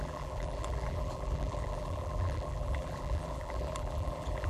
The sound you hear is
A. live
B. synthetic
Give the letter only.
B